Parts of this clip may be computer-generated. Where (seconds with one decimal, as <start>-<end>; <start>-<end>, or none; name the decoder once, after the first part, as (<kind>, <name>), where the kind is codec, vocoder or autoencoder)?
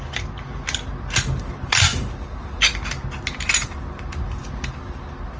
none